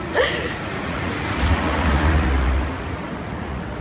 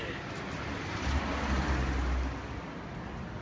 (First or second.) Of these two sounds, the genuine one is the second